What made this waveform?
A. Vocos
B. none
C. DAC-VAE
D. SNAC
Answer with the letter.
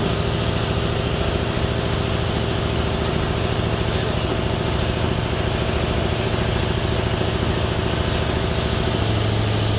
B